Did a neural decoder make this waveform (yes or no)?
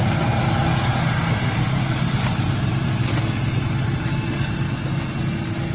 no